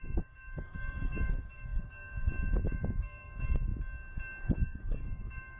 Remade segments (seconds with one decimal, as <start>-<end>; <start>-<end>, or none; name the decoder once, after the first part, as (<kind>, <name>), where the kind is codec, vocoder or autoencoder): 0.0-3.7 (codec, DAC); 4.4-5.6